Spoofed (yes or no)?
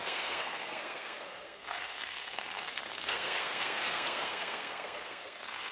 yes